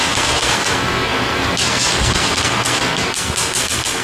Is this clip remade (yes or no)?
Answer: yes